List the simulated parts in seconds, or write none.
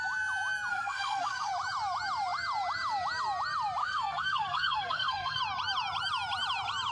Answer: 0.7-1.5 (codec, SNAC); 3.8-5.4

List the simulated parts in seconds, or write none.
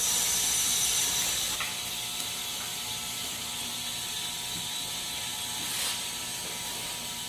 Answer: none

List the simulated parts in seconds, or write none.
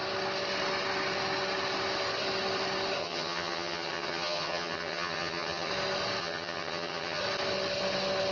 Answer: 3.0-5.7 (vocoder, HiFi-GAN); 6.2-7.2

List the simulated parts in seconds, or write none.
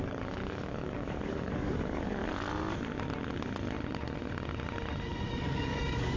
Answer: 0.0-2.2 (codec, DAC); 5.3-6.2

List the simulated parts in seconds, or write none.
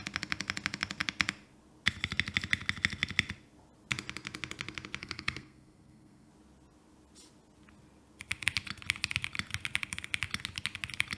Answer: 5.0-6.3 (codec, SNAC)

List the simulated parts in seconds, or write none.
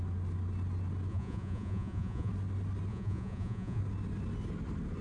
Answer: 1.1-2.3 (vocoder, Vocos); 2.9-3.8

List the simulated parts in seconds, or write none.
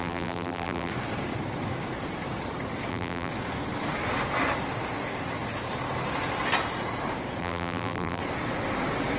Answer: 0.0-0.9 (vocoder, BigVGAN v2); 2.9-3.3; 7.4-8.2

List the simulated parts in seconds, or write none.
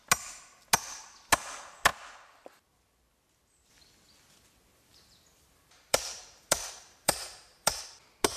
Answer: 4.7-7.8 (vocoder, BigVGAN v2)